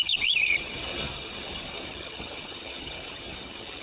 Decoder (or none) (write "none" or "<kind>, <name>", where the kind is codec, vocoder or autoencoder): vocoder, HiFi-GAN